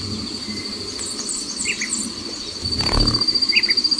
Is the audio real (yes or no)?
yes